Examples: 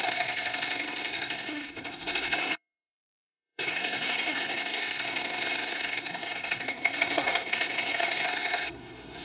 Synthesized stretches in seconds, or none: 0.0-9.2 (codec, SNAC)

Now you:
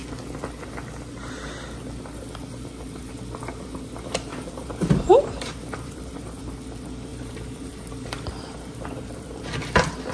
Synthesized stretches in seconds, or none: 4.3-6.4 (vocoder, BigVGAN v2); 7.1-9.4